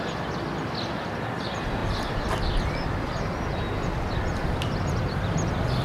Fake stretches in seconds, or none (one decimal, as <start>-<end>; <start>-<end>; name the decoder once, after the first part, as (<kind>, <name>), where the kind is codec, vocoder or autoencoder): none